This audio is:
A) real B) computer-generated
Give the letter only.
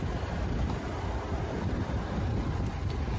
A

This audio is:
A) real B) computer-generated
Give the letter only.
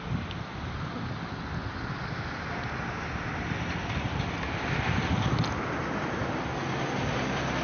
A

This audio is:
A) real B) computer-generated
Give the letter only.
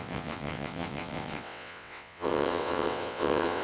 B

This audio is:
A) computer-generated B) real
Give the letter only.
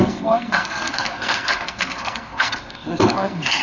A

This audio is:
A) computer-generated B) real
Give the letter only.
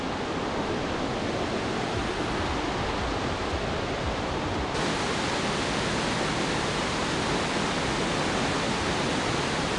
B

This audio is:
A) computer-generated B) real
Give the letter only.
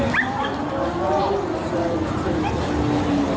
B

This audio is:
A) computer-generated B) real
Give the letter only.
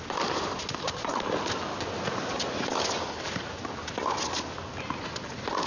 B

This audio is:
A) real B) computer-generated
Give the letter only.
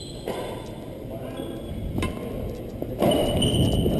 A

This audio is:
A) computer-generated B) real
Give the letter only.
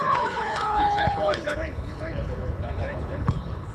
A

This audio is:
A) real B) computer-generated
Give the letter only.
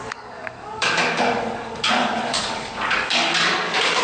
B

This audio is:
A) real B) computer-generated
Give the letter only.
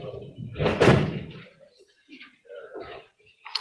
B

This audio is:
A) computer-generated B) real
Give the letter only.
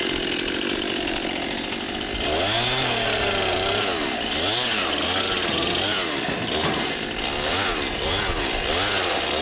B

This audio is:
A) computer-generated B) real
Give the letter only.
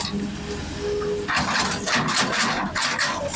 B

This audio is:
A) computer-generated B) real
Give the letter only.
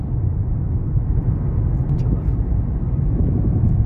B